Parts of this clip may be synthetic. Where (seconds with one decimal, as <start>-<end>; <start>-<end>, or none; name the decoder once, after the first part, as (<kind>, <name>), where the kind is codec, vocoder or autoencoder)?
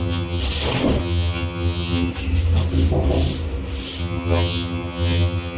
0.0-0.4 (vocoder, HiFi-GAN); 1.0-2.1; 4.0-5.6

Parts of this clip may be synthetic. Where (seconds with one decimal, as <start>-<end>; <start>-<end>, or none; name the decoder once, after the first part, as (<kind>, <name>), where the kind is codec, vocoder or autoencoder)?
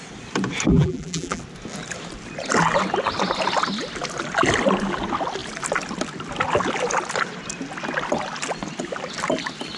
0.7-1.4 (vocoder, BigVGAN v2)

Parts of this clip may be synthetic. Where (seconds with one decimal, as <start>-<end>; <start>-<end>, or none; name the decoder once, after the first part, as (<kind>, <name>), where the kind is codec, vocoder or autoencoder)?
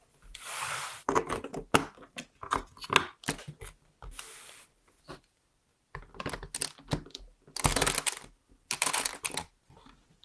0.0-1.5 (vocoder, BigVGAN v2); 4.0-5.7; 8.4-10.2